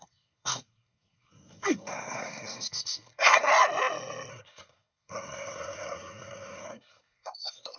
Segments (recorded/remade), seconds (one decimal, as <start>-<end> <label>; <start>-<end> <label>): 0.0-3.5 remade; 3.5-4.3 recorded; 4.3-7.8 remade